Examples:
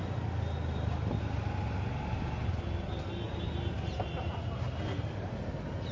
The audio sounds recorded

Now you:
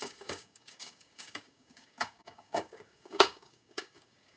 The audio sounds remade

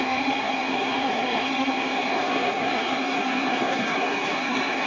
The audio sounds remade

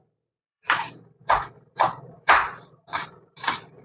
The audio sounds remade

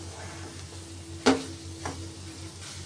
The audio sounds recorded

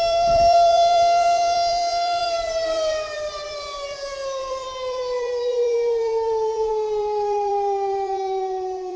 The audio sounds remade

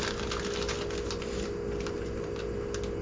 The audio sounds recorded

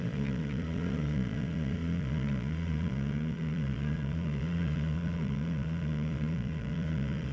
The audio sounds remade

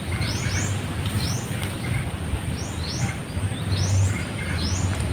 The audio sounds recorded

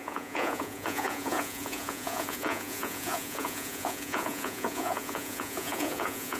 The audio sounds remade